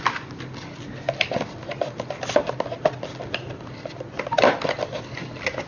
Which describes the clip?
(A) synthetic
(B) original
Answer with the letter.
B